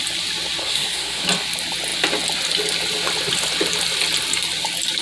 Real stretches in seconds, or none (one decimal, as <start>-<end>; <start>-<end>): 0.0-0.6; 1.2-5.0